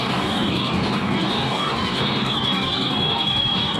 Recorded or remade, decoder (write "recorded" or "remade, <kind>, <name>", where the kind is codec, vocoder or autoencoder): remade, codec, DAC